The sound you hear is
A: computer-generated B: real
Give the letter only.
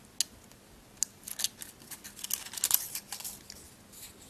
B